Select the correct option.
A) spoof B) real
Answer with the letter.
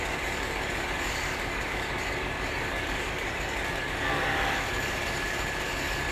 A